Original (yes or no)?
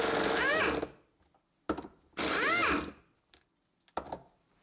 yes